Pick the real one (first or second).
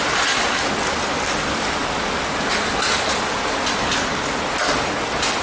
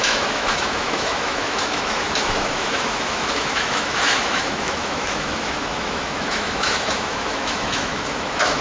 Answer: first